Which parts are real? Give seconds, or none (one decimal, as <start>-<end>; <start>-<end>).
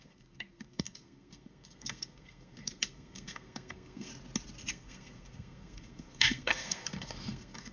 4.1-4.7